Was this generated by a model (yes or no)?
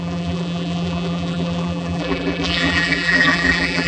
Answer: yes